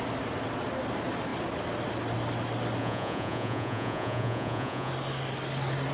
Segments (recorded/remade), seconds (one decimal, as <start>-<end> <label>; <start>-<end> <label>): 0.0-2.8 recorded; 2.8-4.9 remade; 4.9-5.9 recorded